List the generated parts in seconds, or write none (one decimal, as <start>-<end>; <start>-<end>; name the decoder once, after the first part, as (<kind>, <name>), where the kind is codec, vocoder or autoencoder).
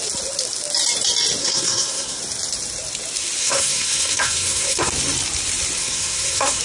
1.4-2.2 (codec, SNAC); 3.4-4.9; 5.8-6.6